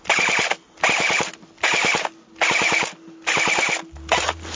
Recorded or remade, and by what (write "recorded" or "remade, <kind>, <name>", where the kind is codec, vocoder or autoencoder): recorded